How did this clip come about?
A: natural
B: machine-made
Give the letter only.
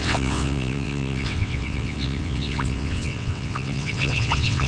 B